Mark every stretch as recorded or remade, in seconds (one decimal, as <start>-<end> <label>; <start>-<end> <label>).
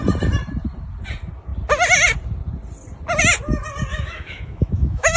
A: 0.0-3.9 recorded; 3.9-5.2 remade